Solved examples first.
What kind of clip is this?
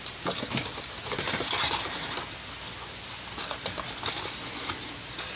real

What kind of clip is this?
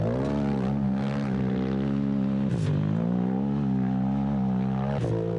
real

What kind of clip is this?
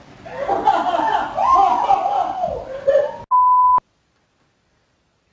real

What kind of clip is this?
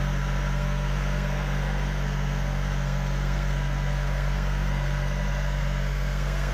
fake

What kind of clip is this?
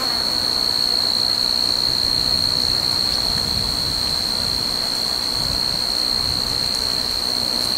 real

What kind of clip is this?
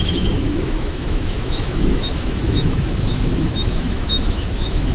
fake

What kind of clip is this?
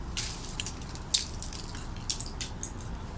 real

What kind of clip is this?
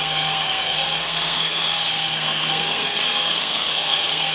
fake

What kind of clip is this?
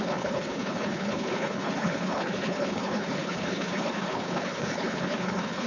fake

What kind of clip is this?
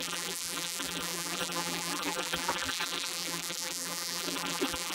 fake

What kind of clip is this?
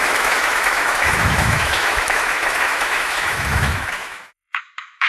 fake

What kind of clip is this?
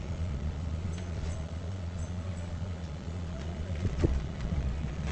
fake